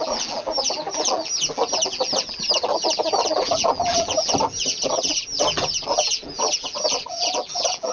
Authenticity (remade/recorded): remade